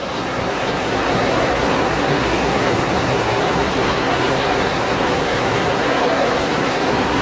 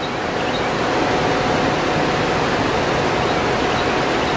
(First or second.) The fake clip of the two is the first